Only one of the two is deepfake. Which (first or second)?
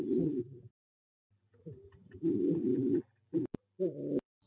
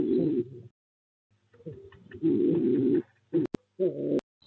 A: first